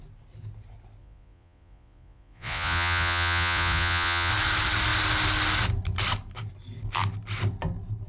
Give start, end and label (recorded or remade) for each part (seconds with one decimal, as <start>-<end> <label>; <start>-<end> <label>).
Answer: 0.0-1.0 recorded; 1.0-4.3 remade; 4.3-8.1 recorded